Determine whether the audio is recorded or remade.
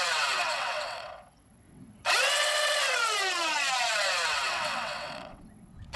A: remade